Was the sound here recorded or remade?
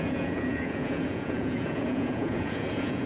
remade